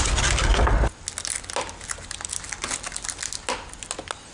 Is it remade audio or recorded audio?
recorded